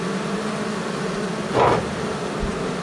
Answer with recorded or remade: recorded